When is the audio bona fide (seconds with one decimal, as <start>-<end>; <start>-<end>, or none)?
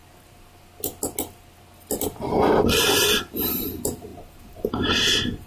0.0-3.3